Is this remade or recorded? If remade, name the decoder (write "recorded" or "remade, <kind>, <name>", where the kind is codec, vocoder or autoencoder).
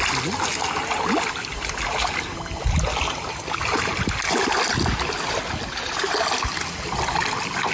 recorded